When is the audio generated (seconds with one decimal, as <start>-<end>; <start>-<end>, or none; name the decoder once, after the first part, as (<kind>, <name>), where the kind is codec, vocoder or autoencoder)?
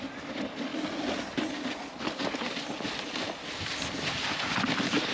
none